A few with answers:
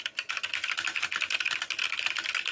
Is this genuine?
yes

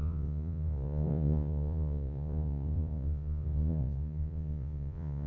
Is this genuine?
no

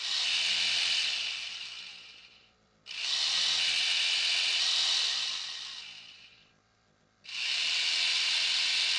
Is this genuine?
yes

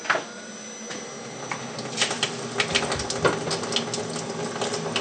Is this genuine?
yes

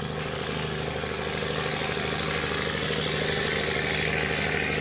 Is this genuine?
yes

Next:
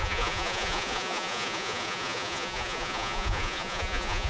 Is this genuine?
no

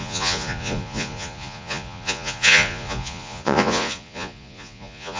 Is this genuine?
no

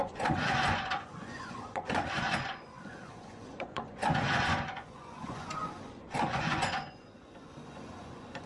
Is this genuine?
no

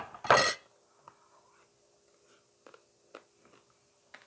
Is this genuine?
yes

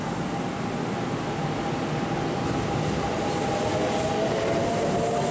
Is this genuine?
yes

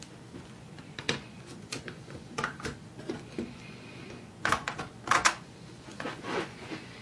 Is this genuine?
no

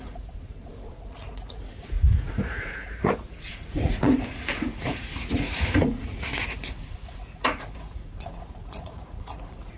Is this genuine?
no